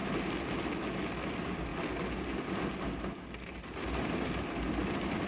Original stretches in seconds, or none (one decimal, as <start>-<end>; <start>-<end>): 0.0-5.3